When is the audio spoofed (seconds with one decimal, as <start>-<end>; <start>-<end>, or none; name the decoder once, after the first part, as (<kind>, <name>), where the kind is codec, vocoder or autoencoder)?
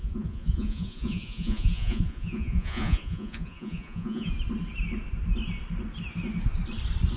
0.0-4.3 (vocoder, Vocos)